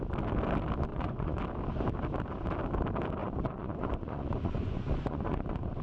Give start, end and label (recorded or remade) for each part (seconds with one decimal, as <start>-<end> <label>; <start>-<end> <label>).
0.0-0.9 recorded; 0.9-1.4 remade; 1.4-3.2 recorded; 3.2-5.8 remade